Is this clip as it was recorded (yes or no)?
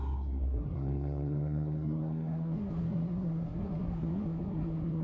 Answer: no